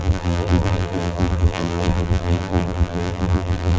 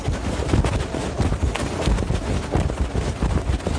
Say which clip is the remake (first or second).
first